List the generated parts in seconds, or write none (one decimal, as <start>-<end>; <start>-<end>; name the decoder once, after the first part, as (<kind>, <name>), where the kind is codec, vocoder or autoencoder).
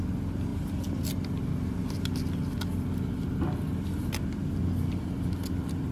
none